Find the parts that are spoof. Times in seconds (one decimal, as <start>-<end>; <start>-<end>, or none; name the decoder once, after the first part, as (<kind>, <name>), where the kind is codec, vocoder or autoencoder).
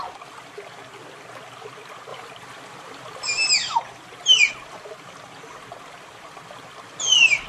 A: none